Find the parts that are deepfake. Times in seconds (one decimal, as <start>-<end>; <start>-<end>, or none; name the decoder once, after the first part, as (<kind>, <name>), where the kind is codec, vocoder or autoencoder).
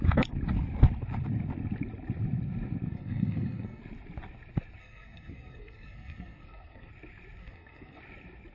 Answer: 2.9-3.8 (codec, SNAC); 4.8-6.9; 7.4-8.0